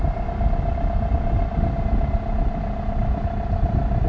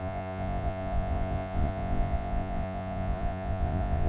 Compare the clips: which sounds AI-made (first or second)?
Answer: second